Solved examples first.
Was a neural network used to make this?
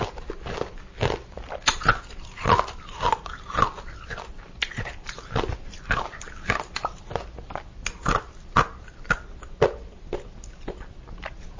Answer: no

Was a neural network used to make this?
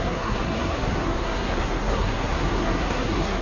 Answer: yes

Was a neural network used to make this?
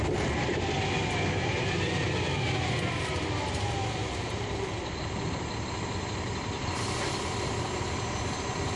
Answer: no